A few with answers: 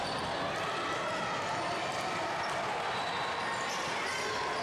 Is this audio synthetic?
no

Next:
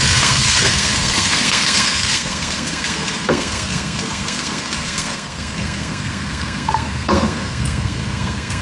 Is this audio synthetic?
yes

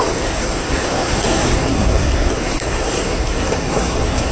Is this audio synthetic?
yes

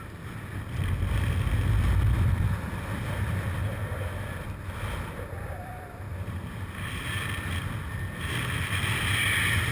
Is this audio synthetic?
no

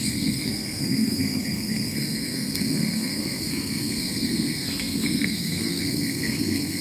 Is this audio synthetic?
yes